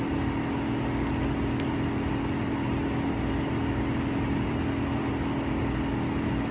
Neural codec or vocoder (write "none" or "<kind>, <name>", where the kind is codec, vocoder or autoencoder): none